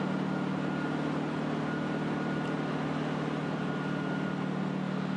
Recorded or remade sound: recorded